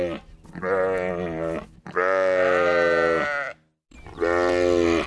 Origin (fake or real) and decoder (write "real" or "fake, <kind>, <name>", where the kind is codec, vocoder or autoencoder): real